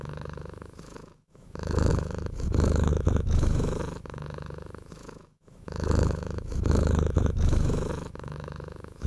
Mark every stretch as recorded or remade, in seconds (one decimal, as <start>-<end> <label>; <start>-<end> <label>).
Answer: 0.0-9.1 remade